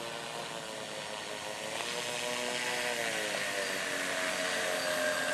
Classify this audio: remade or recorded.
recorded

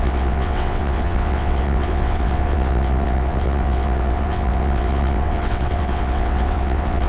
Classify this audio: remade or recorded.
remade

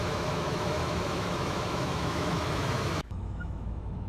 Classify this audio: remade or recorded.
remade